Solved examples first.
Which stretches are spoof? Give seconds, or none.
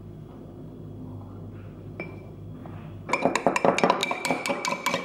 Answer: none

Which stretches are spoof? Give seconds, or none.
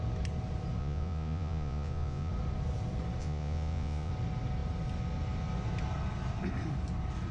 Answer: 0.8-2.3 (vocoder, Vocos); 3.2-4.1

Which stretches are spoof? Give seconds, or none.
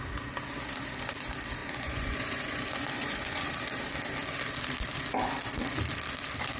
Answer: 1.6-3.5 (vocoder, Vocos)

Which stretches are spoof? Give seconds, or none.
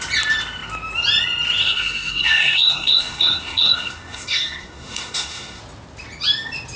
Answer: 1.6-5.6 (codec, SNAC)